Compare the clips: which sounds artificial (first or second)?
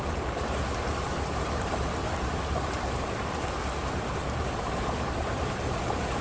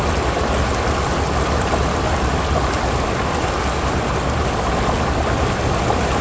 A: first